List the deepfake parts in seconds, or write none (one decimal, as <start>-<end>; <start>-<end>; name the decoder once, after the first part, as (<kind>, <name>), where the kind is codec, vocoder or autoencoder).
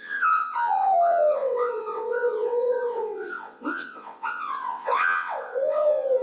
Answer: 0.0-6.2 (vocoder, WaveNeXt)